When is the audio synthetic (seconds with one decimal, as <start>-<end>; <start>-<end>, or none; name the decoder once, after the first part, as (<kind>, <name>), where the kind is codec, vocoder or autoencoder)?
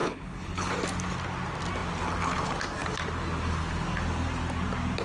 0.0-0.7 (codec, HILCodec)